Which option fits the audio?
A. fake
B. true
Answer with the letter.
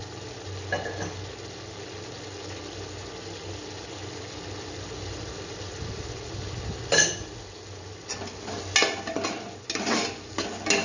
B